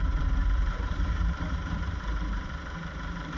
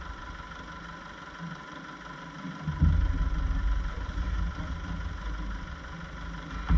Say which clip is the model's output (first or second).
first